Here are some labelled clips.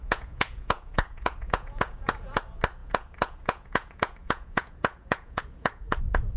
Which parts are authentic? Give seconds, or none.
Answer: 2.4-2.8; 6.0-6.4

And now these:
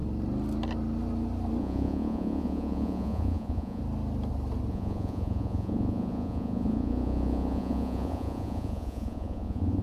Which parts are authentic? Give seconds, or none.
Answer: 0.0-1.6; 3.8-4.7

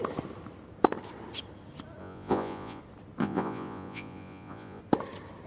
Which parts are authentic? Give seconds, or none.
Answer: 0.0-2.0; 2.8-3.2; 4.8-5.5

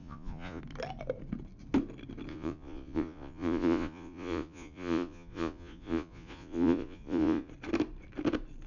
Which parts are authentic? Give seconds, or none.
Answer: 0.6-2.3; 7.5-8.7

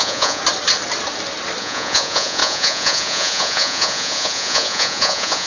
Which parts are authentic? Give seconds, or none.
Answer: 0.4-1.6

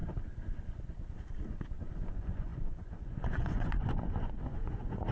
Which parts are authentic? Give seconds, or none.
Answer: 0.0-2.1

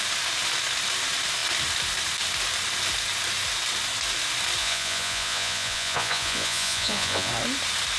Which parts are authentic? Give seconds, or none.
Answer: 0.0-4.6; 7.3-8.0